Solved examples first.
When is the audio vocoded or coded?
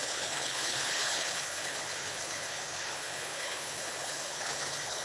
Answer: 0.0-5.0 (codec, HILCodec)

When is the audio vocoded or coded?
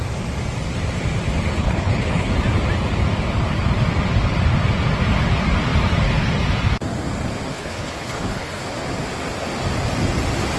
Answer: 1.6-2.3 (codec, HILCodec); 7.5-8.6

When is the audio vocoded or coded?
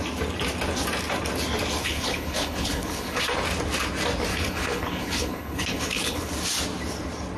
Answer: 1.8-3.2 (codec, HILCodec); 4.3-6.3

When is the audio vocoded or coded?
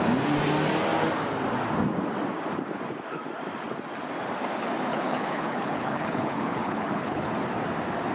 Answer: 4.9-7.3 (codec, HILCodec)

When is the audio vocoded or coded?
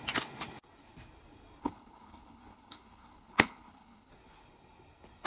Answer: 1.6-4.1 (codec, HILCodec)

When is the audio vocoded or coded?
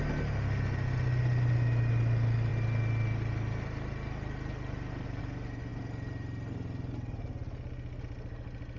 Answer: none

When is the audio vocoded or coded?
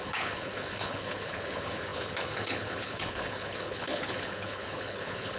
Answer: 0.0-5.4 (codec, HILCodec)